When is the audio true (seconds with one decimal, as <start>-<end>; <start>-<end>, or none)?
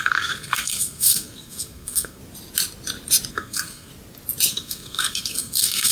2.2-3.3; 3.9-4.5